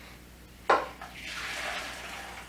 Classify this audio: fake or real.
real